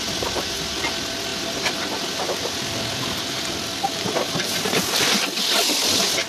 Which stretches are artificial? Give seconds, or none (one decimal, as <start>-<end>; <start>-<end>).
none